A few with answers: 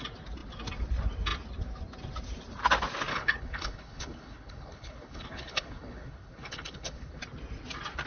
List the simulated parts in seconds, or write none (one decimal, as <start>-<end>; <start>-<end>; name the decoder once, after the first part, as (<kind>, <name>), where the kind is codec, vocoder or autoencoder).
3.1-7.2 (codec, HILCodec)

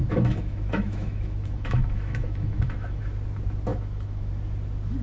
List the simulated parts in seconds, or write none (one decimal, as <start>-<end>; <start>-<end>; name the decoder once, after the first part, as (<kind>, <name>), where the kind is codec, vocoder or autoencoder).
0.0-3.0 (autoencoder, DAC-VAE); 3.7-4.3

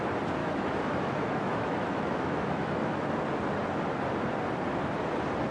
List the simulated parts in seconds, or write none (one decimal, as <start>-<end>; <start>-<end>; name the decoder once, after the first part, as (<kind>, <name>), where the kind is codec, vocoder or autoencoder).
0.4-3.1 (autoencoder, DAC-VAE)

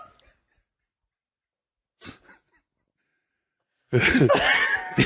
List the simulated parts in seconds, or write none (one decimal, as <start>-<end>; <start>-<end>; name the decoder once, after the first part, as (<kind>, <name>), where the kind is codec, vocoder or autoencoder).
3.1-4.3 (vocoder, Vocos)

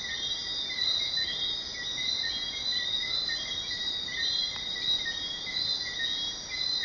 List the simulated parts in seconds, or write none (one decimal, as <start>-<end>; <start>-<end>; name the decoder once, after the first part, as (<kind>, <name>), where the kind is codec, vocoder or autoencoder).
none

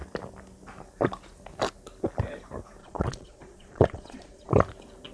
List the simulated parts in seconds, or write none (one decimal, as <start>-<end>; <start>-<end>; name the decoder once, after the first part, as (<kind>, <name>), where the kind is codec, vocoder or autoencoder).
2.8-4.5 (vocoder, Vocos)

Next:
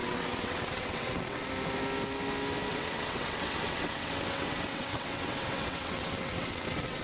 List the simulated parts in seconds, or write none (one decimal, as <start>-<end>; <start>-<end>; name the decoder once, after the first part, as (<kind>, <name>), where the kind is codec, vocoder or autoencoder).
0.0-1.5 (vocoder, WaveNeXt); 2.7-7.0

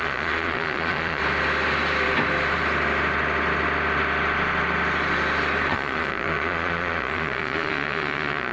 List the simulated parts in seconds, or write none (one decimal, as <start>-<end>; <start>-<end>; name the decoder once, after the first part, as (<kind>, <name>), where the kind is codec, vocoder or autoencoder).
0.0-1.2 (vocoder, Vocos); 5.7-8.5